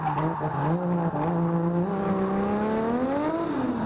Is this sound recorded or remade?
recorded